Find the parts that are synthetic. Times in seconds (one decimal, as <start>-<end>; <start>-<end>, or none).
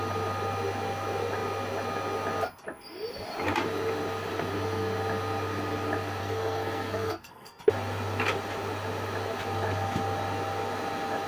6.2-7.6